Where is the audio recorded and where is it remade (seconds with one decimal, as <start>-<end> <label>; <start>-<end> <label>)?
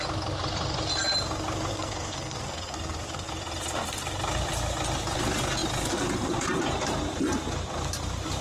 0.0-1.7 recorded; 1.7-3.3 remade; 3.3-8.4 recorded